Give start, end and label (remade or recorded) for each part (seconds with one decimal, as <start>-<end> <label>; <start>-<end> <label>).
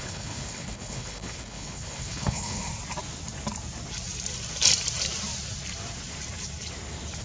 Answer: 0.0-2.7 remade; 2.7-7.2 recorded